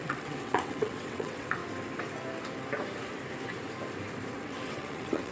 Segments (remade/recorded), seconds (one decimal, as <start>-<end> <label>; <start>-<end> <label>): 0.0-1.6 remade; 1.6-4.3 recorded; 4.3-5.3 remade